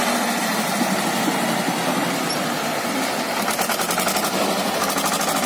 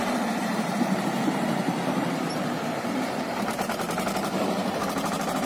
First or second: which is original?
first